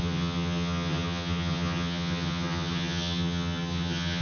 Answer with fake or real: fake